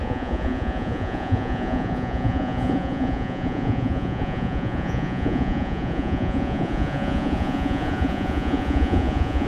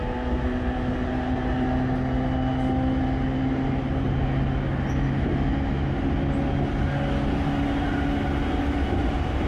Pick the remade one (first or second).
first